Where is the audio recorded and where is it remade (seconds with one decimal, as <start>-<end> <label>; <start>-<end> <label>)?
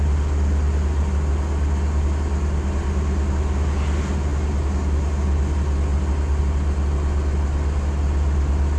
0.0-8.8 recorded